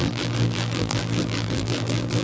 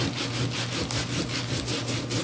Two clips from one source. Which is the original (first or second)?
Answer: second